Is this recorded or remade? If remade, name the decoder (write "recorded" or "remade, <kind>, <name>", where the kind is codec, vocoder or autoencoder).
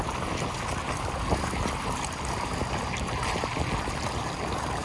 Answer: recorded